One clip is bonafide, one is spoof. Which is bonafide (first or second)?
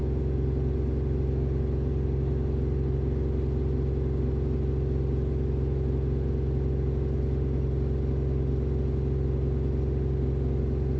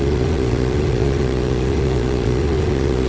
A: first